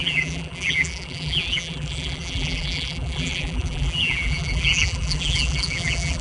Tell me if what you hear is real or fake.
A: fake